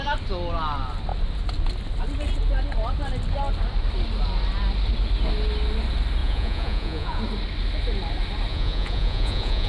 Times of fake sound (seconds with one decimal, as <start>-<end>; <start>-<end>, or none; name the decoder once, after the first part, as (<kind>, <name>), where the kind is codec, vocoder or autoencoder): 6.2-7.2 (vocoder, Vocos); 8.5-9.7